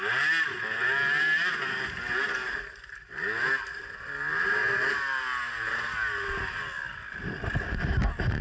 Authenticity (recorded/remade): recorded